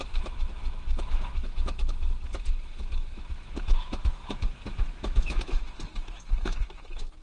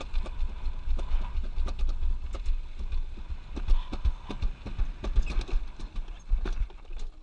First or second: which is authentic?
second